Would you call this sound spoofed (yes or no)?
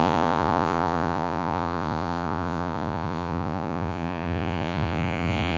yes